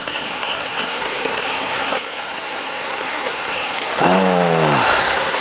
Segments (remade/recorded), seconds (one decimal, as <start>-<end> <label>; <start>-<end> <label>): 0.0-3.9 remade; 3.9-5.0 recorded; 5.0-5.4 remade